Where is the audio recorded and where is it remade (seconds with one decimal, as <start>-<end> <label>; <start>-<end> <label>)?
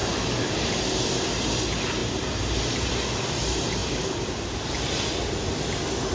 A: 0.0-0.7 remade; 0.7-2.0 recorded; 2.0-2.9 remade; 2.9-3.8 recorded; 3.8-4.9 remade; 4.9-6.1 recorded